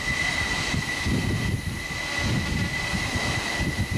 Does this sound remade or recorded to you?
recorded